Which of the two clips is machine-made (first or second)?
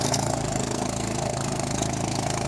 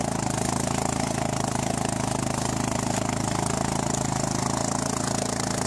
first